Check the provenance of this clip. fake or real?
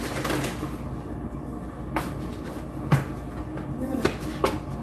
real